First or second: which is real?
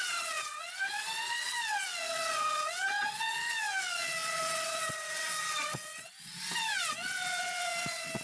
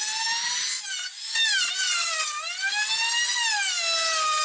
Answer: second